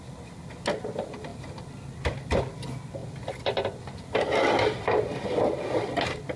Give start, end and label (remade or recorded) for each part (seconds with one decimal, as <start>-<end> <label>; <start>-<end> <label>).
0.0-6.4 recorded